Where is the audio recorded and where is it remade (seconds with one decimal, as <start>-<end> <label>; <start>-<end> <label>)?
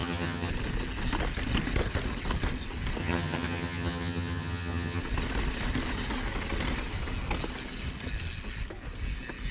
0.0-0.5 remade; 0.5-3.0 recorded; 3.0-5.0 remade; 5.0-9.5 recorded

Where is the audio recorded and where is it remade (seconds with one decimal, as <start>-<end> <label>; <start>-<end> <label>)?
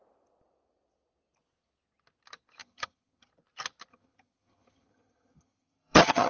0.0-2.6 recorded; 2.6-3.3 remade; 3.3-3.9 recorded; 3.9-6.3 remade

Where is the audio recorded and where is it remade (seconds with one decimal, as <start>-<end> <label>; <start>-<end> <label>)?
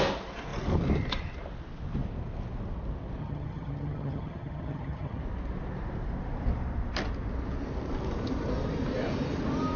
0.0-3.2 recorded; 3.2-5.2 remade; 5.2-9.8 recorded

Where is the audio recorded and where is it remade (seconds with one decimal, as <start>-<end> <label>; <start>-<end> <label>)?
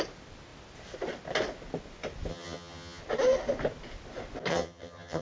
0.0-2.3 recorded; 2.3-3.0 remade; 3.0-4.5 recorded; 4.5-5.2 remade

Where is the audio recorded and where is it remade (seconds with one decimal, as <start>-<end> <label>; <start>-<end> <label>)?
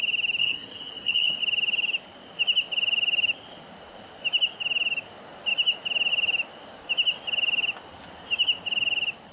0.0-0.4 recorded; 0.4-1.4 remade; 1.4-9.3 recorded